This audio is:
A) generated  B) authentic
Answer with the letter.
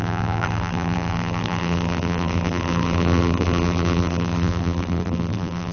A